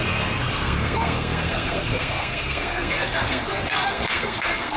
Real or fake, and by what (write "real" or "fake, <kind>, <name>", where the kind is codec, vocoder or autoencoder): fake, codec, SNAC